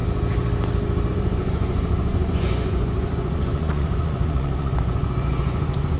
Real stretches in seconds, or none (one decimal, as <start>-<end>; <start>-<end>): 0.0-1.1